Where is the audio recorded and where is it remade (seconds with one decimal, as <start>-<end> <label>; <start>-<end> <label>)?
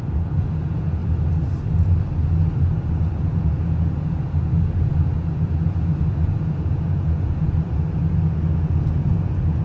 0.0-1.0 remade; 1.0-3.2 recorded; 3.2-9.6 remade